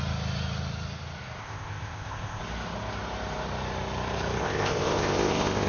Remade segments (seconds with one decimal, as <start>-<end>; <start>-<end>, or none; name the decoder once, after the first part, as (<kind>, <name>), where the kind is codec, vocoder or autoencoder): 1.4-2.4 (codec, ZipCodec); 4.4-5.7